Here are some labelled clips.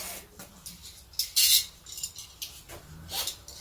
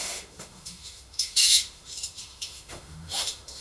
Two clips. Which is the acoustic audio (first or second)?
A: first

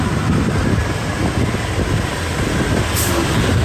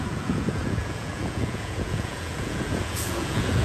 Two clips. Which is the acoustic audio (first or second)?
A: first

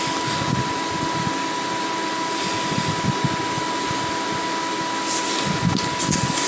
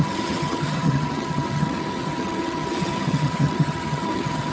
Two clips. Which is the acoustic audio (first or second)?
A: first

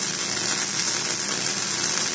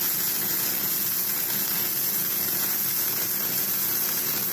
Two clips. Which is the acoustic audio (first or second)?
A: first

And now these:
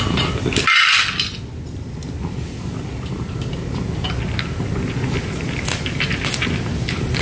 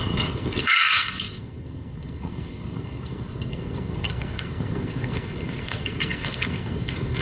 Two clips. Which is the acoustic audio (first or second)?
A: first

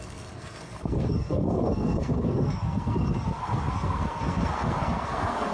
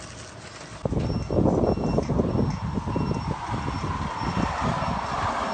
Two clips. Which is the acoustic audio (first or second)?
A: second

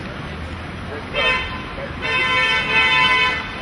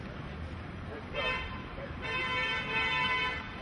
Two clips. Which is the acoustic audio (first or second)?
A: first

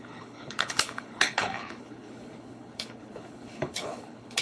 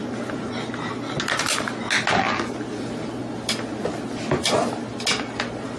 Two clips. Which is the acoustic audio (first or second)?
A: second